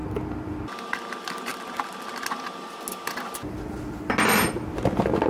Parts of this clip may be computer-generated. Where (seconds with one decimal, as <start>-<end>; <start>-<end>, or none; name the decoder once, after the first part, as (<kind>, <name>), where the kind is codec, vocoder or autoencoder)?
none